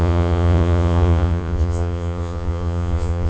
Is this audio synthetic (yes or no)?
yes